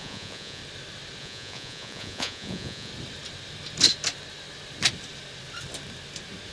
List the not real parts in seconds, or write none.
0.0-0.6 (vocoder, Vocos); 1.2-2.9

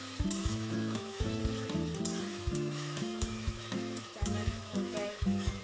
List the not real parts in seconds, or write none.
0.4-1.4 (autoencoder, DAC-VAE); 2.3-5.6